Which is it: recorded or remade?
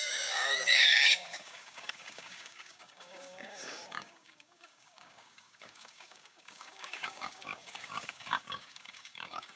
remade